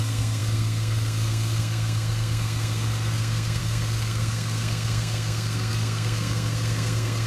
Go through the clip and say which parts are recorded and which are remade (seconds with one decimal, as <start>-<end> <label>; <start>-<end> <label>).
0.0-7.3 remade